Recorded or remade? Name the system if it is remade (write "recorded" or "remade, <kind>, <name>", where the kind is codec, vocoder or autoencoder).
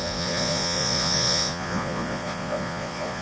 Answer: remade, vocoder, Vocos